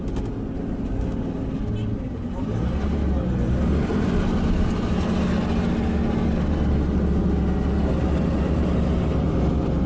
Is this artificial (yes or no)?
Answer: no